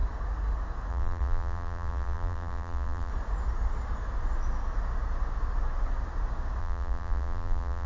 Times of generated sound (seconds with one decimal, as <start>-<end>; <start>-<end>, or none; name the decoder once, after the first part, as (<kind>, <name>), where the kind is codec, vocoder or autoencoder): 0.9-3.1 (vocoder, BigVGAN v2); 6.6-7.9